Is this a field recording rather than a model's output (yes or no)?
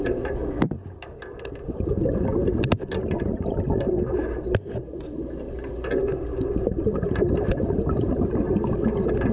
yes